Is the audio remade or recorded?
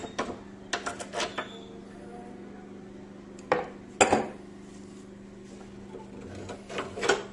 recorded